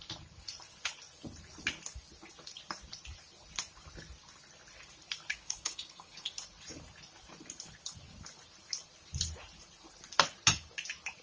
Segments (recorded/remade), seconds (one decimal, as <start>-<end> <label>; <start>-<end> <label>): 0.0-5.3 recorded; 5.3-6.3 remade; 6.3-11.2 recorded